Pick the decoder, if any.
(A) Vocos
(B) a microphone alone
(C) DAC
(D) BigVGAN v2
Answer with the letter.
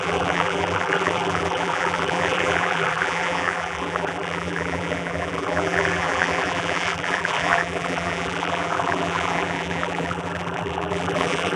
D